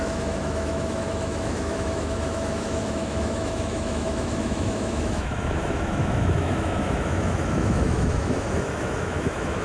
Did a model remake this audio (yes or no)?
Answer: yes